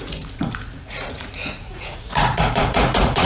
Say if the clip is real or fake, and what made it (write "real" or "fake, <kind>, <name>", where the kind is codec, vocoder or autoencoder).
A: fake, vocoder, Vocos